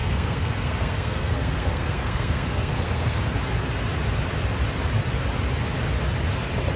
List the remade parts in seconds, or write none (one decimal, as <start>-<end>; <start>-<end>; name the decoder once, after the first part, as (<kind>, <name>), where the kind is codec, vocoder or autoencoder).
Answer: 0.0-3.2 (codec, SNAC)